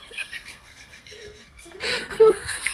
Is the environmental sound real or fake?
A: fake